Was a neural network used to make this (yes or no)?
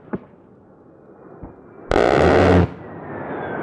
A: no